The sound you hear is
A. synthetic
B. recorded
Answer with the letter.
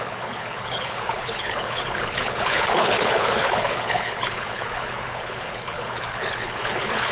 A